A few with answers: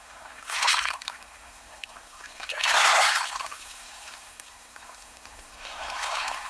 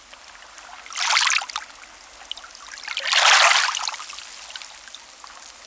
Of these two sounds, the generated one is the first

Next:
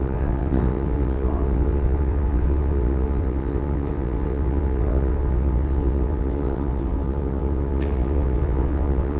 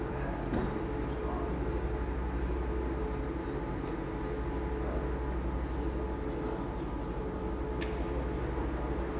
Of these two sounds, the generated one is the first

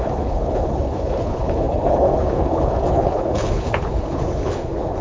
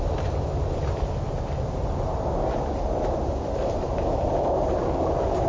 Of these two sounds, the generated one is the first